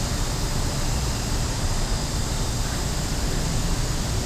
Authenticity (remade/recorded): recorded